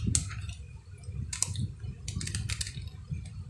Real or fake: real